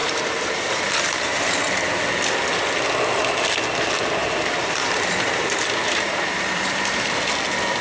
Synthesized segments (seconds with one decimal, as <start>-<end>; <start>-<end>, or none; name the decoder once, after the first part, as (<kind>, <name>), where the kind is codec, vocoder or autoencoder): 0.0-1.7 (vocoder, BigVGAN v2); 4.2-7.3